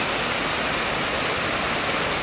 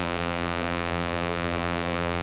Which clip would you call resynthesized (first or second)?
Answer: second